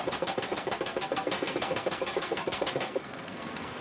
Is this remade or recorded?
remade